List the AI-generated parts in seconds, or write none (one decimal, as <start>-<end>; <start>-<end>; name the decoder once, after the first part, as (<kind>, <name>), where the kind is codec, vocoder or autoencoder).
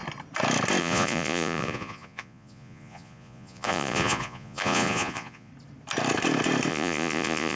0.8-5.5 (vocoder, Vocos); 6.7-7.6